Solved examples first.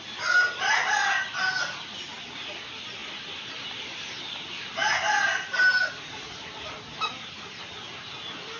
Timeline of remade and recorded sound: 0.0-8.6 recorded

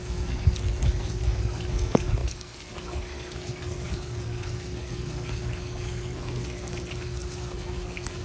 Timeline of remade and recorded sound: 0.0-8.2 remade